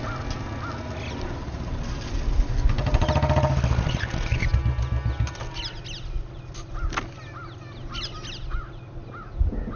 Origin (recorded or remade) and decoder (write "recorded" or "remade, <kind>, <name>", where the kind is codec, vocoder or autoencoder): recorded